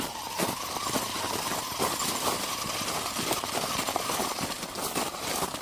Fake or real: fake